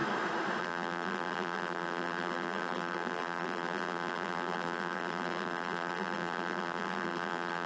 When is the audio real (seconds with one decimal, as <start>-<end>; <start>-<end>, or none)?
0.0-0.6